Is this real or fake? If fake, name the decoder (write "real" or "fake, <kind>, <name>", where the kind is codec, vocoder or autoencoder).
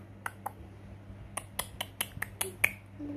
real